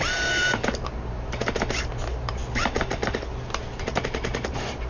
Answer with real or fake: fake